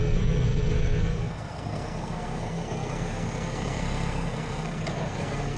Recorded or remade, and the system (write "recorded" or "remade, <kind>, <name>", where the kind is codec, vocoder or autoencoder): remade, codec, SNAC